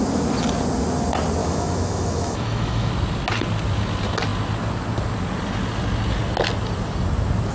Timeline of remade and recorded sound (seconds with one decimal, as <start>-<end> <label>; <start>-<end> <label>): 0.0-1.4 recorded; 1.4-2.9 remade; 2.9-7.5 recorded